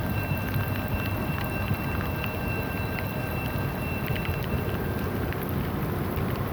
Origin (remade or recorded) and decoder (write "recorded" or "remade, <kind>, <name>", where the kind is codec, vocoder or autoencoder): recorded